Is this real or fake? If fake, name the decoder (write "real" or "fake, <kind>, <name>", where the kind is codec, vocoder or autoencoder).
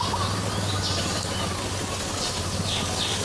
real